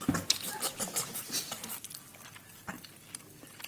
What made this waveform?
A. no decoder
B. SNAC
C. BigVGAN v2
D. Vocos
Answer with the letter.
A